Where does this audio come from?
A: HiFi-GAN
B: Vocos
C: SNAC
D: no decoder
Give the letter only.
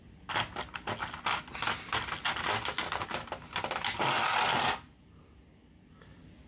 D